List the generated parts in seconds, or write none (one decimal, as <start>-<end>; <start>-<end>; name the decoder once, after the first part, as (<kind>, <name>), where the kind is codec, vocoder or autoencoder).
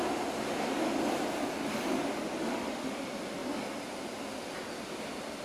2.4-3.0 (autoencoder, DAC-VAE)